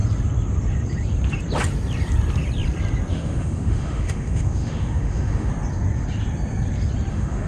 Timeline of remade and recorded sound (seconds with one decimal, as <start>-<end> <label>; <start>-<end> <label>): 0.0-3.1 recorded; 3.1-5.5 remade; 5.5-7.1 recorded; 7.1-7.5 remade